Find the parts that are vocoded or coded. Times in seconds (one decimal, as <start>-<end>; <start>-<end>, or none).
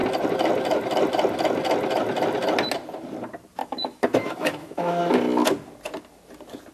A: 3.6-5.0